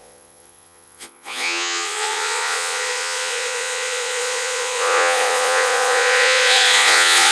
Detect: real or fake fake